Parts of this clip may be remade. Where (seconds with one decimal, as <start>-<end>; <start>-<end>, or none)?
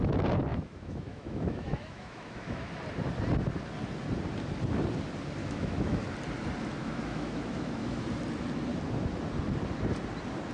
0.5-2.7; 5.4-6.0; 6.8-8.0